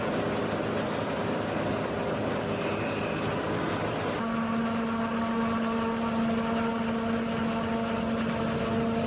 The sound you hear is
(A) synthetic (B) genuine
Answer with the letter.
B